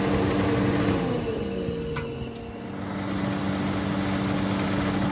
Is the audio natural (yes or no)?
yes